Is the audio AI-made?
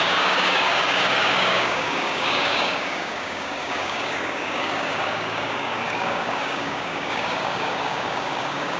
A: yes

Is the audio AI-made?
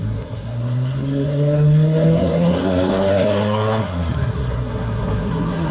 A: yes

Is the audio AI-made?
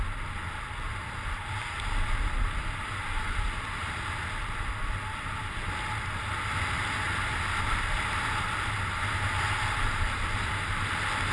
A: no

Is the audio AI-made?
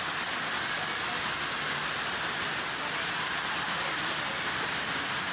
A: no